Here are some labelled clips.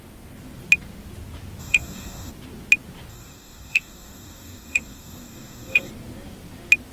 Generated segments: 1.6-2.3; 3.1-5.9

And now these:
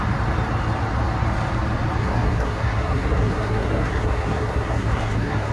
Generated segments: 2.0-5.5

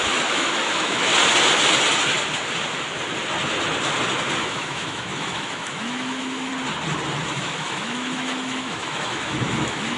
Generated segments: 0.0-1.1; 4.4-6.5; 7.3-10.0

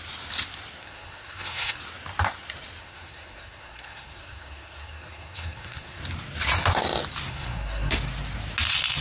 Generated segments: 0.8-1.8; 2.8-6.0; 7.3-7.9